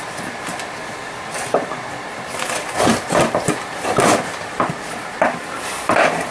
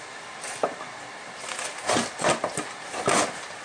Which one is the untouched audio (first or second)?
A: second